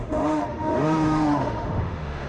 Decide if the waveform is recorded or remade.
remade